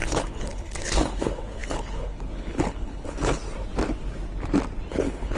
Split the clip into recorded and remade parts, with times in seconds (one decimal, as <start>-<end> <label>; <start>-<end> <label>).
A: 0.0-3.4 remade; 3.4-4.9 recorded; 4.9-5.4 remade